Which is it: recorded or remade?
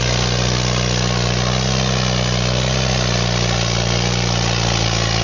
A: recorded